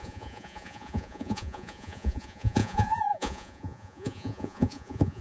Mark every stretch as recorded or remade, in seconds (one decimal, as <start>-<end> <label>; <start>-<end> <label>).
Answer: 0.0-5.2 remade